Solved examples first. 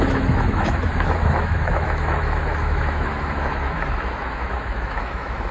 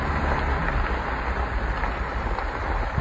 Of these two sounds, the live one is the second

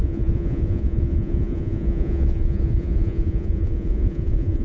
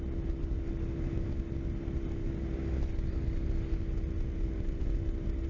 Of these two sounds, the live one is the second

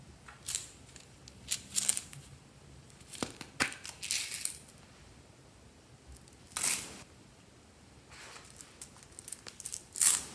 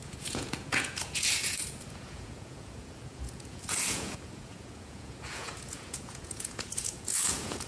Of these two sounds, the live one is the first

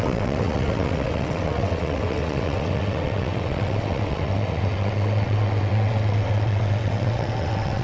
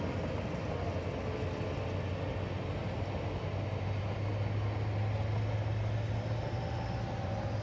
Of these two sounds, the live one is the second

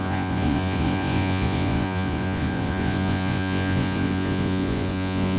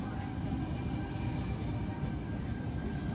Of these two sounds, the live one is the second